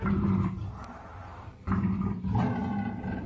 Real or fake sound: real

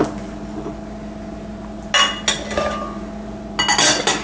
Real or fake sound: real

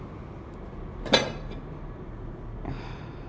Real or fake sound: real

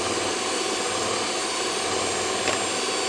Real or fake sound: real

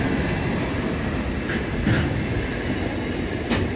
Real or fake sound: real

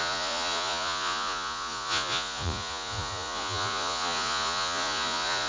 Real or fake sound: fake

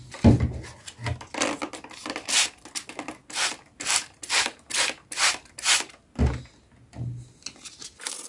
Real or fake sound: real